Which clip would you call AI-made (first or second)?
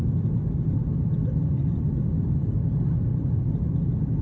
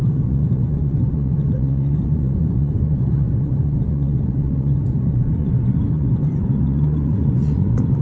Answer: second